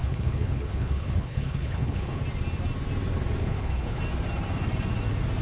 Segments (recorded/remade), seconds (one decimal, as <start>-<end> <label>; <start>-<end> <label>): 0.0-2.2 remade; 2.2-3.4 recorded; 3.4-4.0 remade; 4.0-5.4 recorded